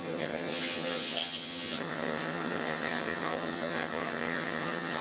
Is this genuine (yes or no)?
no